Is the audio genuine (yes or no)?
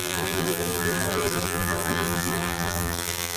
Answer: no